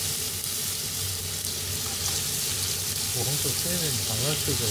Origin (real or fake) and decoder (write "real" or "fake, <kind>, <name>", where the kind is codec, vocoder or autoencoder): real